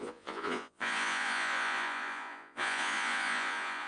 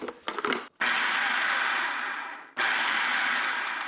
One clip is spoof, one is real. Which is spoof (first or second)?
first